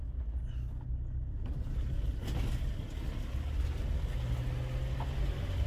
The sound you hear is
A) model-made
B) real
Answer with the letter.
B